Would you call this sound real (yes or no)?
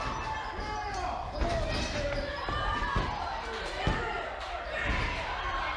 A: yes